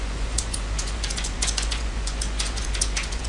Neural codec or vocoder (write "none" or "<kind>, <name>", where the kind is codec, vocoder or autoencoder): vocoder, Vocos